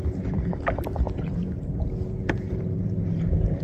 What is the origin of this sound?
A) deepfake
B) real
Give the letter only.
B